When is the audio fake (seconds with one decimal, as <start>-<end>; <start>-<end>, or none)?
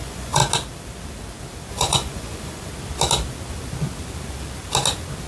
0.0-0.4; 1.7-2.7